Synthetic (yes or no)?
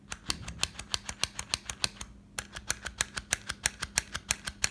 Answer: no